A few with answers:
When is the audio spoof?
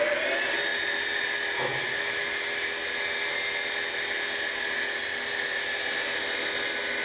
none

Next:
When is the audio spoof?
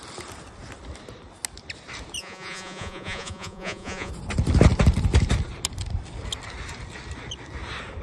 2.2-4.1 (vocoder, Vocos)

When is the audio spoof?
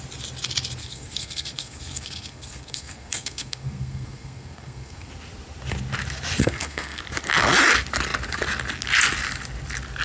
0.8-5.1 (codec, SNAC); 6.4-7.0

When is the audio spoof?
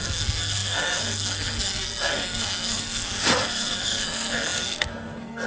0.0-5.5 (codec, SNAC)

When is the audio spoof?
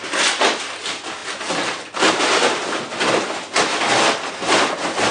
none